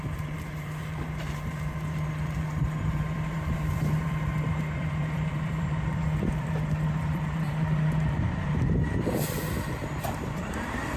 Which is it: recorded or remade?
remade